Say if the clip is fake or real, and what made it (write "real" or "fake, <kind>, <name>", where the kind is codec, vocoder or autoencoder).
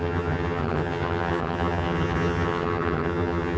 fake, vocoder, HiFi-GAN